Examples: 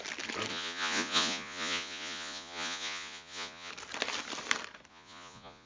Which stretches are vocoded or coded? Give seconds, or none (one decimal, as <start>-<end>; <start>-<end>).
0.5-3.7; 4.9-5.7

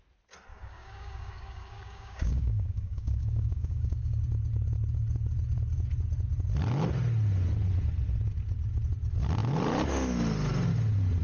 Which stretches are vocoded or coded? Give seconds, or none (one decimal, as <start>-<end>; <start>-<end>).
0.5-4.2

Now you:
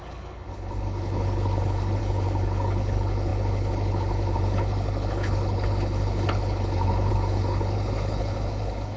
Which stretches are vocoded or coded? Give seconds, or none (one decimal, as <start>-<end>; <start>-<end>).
0.0-9.0

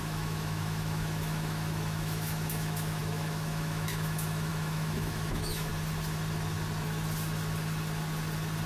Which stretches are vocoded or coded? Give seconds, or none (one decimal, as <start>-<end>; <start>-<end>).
0.0-5.7

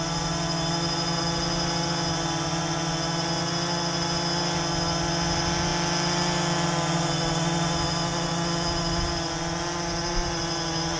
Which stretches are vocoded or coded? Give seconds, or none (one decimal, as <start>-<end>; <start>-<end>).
none

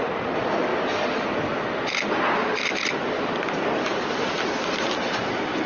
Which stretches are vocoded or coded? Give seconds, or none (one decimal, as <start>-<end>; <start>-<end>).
none